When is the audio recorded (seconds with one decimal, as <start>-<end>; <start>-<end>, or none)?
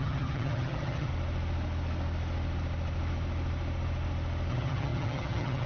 1.1-4.5